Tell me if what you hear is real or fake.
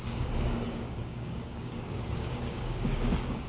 fake